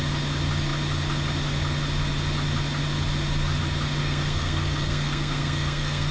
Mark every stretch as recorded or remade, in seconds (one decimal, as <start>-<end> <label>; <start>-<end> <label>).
0.0-4.0 recorded; 4.0-6.1 remade